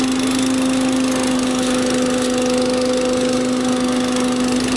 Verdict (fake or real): real